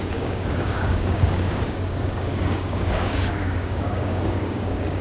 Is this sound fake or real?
fake